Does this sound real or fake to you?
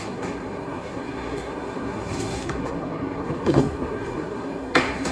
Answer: fake